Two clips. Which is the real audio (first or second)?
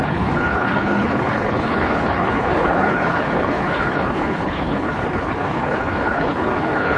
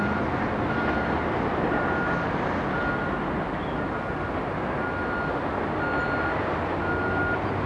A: second